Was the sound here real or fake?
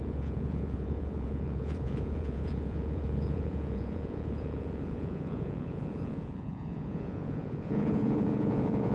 fake